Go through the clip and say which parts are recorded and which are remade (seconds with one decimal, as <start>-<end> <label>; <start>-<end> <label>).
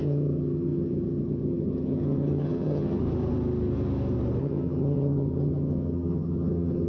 0.0-3.0 remade; 3.0-4.4 recorded; 4.4-6.9 remade